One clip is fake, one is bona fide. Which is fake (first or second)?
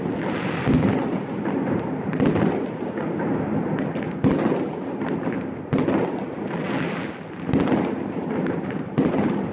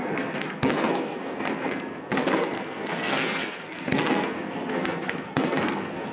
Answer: second